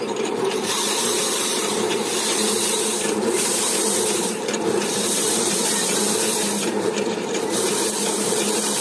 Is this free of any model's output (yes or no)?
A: no